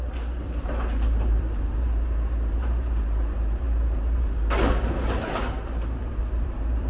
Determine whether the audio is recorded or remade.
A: remade